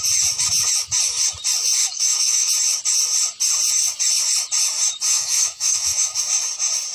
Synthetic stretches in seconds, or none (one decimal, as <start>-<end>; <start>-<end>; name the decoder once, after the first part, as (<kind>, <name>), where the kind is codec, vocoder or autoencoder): 1.8-2.5 (autoencoder, DAC-VAE); 5.1-6.2